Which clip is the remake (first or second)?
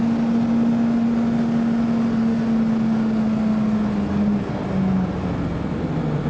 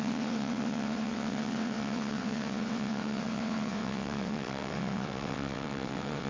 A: second